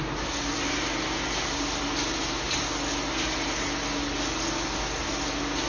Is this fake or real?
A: real